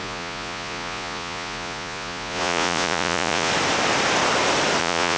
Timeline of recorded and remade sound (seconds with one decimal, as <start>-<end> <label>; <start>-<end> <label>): 0.0-3.5 remade; 3.5-4.8 recorded; 4.8-5.2 remade